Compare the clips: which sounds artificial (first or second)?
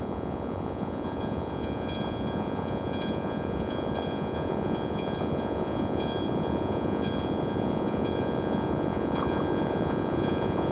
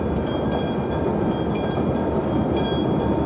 first